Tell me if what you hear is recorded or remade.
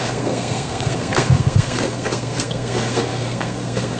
remade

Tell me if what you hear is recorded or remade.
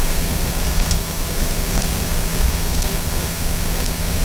remade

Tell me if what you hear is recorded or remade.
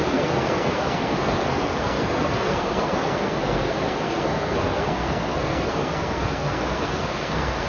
remade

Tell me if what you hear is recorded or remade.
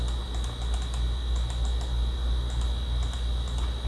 recorded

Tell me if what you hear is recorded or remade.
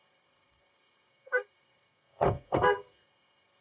remade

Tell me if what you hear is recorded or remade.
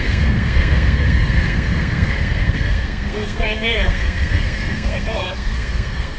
remade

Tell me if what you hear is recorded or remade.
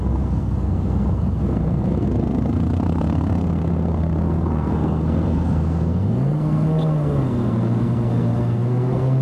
remade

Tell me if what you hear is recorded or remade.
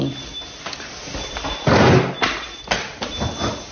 recorded